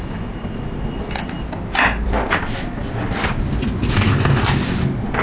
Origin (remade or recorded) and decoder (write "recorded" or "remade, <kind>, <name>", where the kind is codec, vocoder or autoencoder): recorded